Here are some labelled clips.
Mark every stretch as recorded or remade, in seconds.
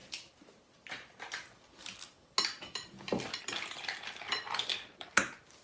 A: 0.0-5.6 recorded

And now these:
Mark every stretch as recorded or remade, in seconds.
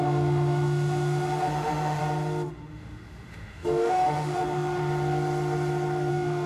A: 0.0-2.0 remade; 2.0-2.5 recorded; 2.5-4.8 remade; 4.8-6.1 recorded; 6.1-6.5 remade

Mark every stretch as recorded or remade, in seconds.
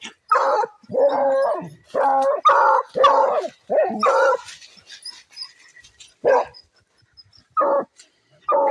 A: 0.0-8.7 recorded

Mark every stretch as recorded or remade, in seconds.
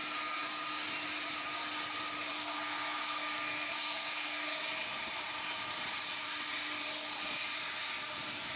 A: 0.0-2.3 recorded; 2.3-4.6 remade; 4.6-8.6 recorded